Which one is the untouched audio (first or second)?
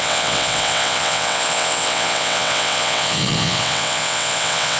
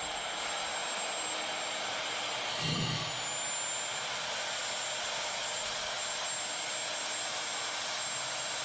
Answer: second